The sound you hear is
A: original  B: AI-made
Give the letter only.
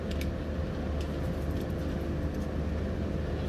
A